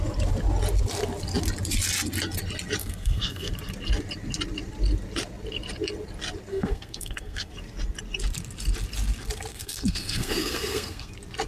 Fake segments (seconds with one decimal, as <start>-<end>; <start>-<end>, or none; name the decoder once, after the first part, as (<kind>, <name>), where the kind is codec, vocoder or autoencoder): 2.8-3.5 (codec, SNAC); 6.5-7.5; 9.5-11.1